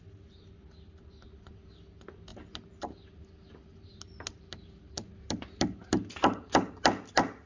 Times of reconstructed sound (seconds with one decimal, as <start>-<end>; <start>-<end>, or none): none